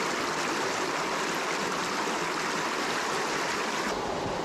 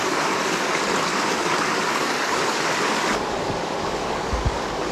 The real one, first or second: first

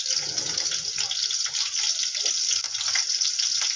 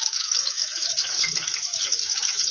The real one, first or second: first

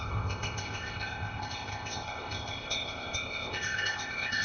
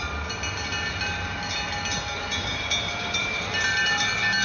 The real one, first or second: second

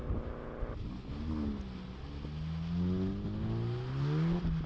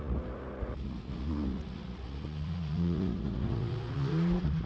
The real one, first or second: first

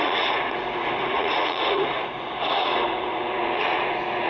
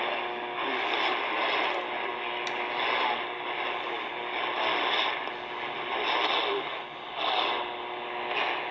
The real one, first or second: second